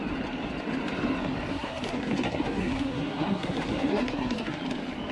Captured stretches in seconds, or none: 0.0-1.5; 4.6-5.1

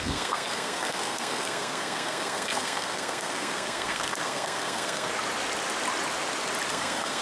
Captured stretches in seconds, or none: 5.1-6.7

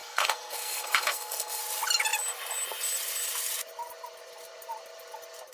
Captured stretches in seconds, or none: 1.6-5.5

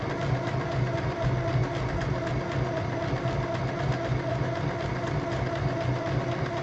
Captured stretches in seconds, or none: 0.0-6.6

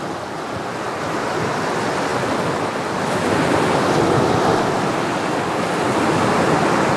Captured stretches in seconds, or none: 0.0-7.0

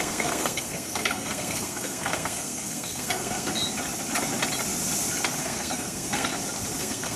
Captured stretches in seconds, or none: 3.6-5.4; 6.3-6.8

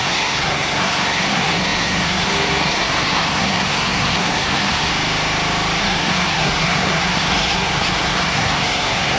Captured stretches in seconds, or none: 4.9-5.8

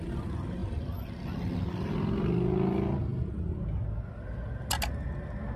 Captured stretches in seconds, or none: 0.0-5.6